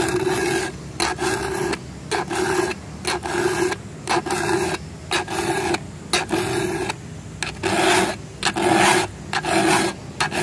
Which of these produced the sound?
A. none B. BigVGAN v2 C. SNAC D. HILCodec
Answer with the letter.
A